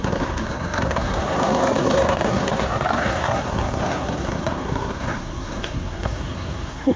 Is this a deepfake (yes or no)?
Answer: yes